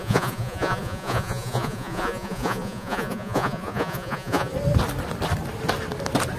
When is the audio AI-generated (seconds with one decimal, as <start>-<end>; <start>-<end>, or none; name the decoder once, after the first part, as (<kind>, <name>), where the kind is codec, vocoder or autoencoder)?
0.0-4.5 (vocoder, Vocos)